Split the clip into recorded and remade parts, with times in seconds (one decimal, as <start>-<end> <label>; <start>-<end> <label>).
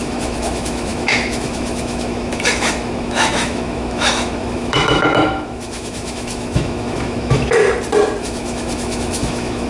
0.0-7.6 remade; 7.6-8.2 recorded; 8.2-9.7 remade